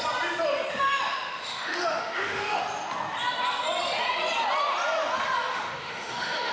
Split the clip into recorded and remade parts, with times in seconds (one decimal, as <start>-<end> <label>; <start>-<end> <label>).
0.0-0.7 recorded; 0.7-2.6 remade; 2.6-5.5 recorded; 5.5-6.5 remade